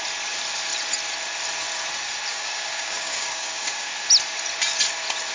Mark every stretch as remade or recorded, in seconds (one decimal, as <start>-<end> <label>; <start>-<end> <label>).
0.0-2.3 recorded; 2.3-3.9 remade; 3.9-5.3 recorded